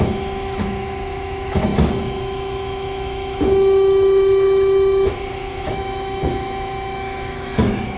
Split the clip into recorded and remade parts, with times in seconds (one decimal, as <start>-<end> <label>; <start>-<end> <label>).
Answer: 0.0-1.7 remade; 1.7-2.2 recorded; 2.2-8.0 remade